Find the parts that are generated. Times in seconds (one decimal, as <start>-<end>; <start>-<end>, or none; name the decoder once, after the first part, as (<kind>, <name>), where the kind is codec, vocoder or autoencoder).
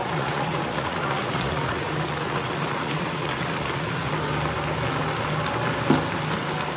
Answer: 0.0-4.1 (vocoder, Vocos)